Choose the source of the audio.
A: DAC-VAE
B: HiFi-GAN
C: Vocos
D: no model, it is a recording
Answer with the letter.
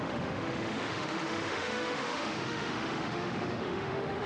A